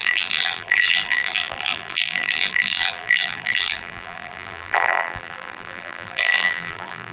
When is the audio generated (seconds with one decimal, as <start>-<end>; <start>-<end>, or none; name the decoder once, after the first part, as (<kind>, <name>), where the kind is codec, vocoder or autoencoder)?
0.0-7.1 (vocoder, BigVGAN v2)